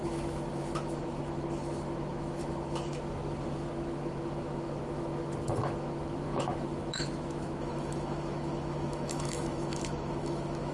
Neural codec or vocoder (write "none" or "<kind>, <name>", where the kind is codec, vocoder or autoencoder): autoencoder, DAC-VAE